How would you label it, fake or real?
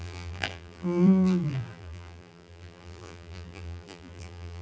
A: fake